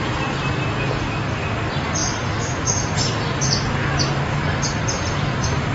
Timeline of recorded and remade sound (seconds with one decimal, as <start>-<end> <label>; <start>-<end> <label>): 0.0-5.7 recorded